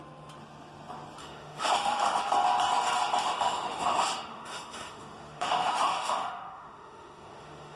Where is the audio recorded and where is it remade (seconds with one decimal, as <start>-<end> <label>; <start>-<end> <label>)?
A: 0.0-1.2 recorded; 1.2-2.2 remade; 2.2-3.2 recorded; 3.2-7.8 remade